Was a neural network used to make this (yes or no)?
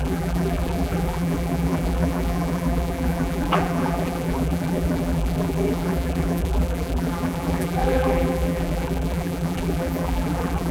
yes